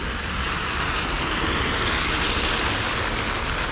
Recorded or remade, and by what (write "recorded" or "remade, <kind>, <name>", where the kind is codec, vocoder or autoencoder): recorded